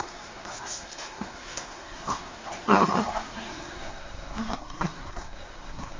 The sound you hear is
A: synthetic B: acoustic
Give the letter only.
A